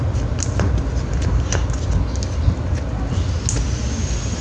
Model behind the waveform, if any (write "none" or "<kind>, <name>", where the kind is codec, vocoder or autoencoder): none